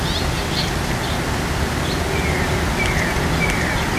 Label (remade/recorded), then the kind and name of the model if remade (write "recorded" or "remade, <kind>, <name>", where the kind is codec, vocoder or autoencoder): recorded